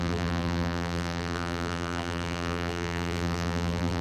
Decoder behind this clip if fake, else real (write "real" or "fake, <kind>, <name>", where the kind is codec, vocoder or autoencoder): fake, vocoder, BigVGAN v2